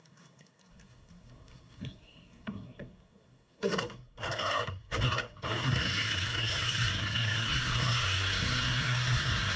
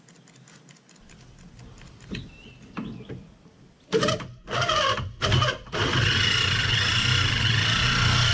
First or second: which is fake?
first